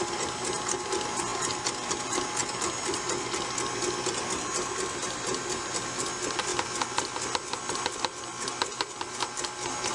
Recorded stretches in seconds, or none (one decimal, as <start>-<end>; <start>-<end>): 0.0-9.9